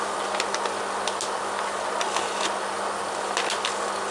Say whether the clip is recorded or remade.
recorded